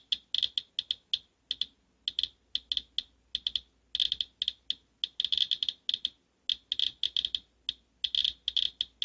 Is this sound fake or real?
real